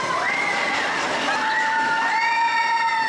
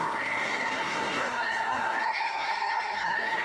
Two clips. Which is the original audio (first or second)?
first